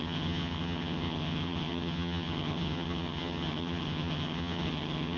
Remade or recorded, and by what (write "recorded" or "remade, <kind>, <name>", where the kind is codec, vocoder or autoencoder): remade, vocoder, HiFi-GAN